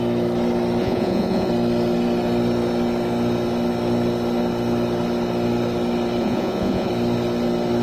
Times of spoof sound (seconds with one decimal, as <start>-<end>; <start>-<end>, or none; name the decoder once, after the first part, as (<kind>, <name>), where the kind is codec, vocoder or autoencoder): 0.8-1.5 (vocoder, Vocos); 6.2-6.9